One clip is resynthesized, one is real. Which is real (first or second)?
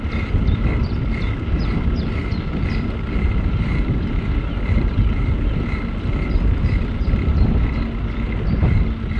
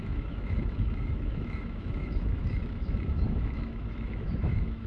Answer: first